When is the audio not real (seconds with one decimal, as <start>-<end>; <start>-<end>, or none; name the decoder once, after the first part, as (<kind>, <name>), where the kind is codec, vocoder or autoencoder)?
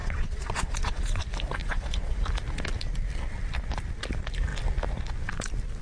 0.0-1.2 (vocoder, Vocos); 1.6-2.2